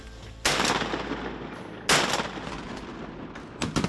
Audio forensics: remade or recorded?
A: recorded